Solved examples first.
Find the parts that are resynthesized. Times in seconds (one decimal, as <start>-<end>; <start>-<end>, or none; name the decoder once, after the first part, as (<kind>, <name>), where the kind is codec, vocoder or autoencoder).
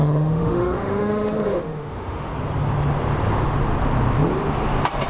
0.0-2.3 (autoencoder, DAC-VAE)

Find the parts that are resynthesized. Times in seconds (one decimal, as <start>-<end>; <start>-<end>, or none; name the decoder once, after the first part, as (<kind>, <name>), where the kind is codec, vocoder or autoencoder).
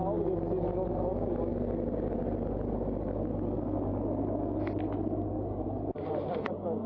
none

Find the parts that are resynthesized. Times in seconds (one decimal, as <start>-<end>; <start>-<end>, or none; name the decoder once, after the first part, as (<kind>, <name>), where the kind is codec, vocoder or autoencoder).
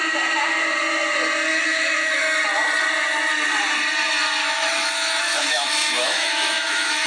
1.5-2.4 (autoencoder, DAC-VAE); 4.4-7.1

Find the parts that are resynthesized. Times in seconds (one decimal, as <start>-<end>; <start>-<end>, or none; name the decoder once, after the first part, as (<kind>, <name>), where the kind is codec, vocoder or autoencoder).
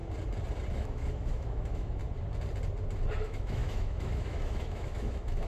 0.7-2.0 (autoencoder, DAC-VAE); 3.1-5.5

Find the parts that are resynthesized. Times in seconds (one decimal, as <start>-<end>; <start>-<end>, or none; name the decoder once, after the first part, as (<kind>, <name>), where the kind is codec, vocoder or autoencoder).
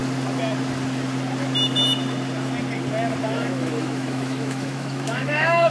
3.2-5.7 (autoencoder, DAC-VAE)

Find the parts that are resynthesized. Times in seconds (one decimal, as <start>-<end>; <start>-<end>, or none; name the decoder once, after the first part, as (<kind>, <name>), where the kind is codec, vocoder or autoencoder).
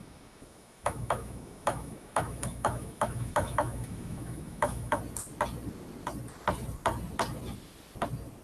0.0-5.0 (autoencoder, DAC-VAE)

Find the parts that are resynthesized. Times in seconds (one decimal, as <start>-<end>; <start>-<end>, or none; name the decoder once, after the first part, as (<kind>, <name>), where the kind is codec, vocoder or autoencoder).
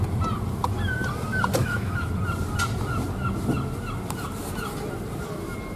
1.6-2.1 (autoencoder, DAC-VAE)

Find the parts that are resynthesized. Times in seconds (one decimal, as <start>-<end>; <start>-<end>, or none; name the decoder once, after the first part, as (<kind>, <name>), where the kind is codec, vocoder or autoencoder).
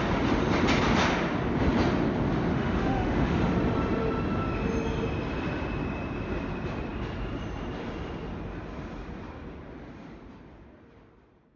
2.5-3.4 (autoencoder, DAC-VAE)